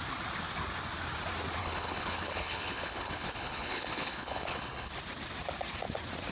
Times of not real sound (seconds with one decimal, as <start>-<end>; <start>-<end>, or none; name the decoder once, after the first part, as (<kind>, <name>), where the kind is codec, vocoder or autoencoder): 1.6-4.9 (codec, HILCodec)